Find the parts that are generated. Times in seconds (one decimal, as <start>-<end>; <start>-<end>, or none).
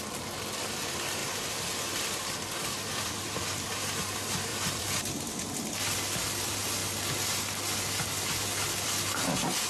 1.2-3.7; 4.5-5.4